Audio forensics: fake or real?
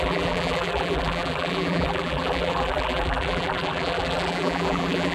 fake